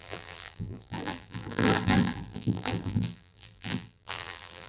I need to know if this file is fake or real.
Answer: fake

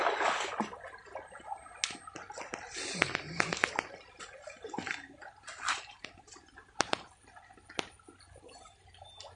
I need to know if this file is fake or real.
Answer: real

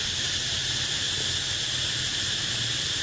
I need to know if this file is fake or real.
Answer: real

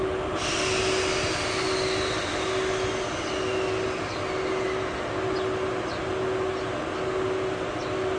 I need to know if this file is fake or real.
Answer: real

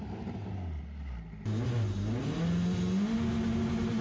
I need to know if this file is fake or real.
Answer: real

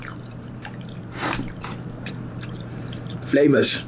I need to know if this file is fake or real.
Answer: fake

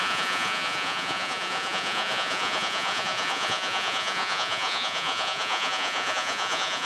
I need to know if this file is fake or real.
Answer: fake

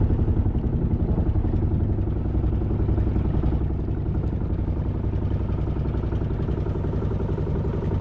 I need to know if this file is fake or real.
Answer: real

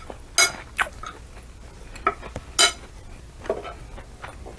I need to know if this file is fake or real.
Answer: real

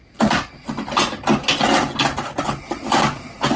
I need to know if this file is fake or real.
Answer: real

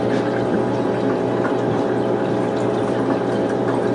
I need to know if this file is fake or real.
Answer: real